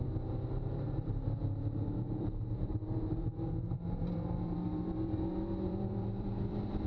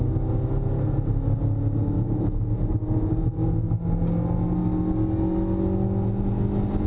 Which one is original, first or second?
second